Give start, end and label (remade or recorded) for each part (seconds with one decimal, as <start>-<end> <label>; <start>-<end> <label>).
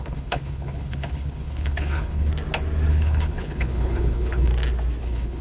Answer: 0.0-2.3 remade; 2.3-2.9 recorded; 2.9-4.5 remade; 4.5-5.0 recorded; 5.0-5.4 remade